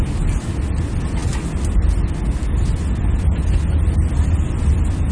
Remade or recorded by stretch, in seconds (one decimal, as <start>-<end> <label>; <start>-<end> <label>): 0.0-5.1 recorded